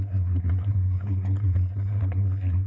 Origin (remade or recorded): remade